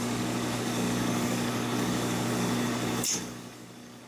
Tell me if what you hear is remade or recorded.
remade